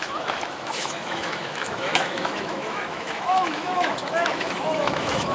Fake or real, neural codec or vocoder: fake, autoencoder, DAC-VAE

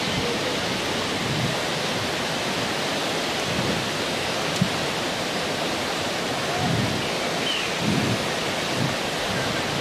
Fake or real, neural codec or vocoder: real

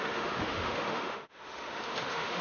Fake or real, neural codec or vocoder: fake, autoencoder, DAC-VAE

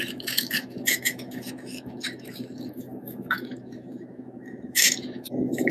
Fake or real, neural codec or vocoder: fake, autoencoder, DAC-VAE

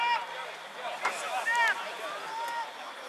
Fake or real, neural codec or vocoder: real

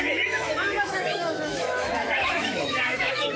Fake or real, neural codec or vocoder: fake, autoencoder, DAC-VAE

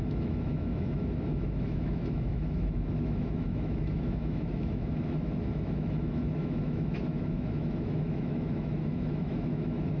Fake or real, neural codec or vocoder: fake, autoencoder, DAC-VAE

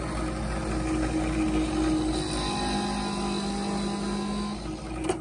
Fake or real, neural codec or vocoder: real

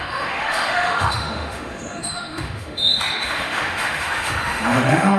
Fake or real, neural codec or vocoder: fake, autoencoder, DAC-VAE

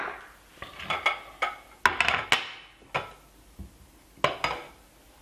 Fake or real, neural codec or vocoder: real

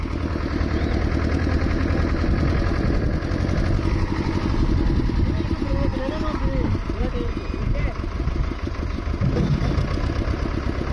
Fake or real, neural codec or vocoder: real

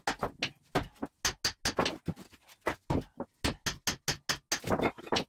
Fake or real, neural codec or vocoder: real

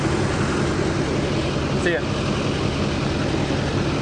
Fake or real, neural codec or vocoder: real